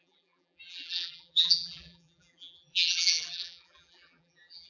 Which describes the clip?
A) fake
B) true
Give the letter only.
A